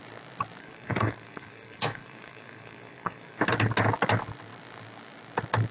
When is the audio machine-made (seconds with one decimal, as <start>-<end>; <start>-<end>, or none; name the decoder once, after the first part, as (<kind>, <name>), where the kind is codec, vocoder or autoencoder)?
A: 0.6-3.4 (codec, SNAC)